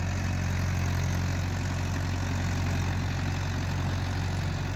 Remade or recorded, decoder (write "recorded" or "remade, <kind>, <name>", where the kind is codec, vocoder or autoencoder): recorded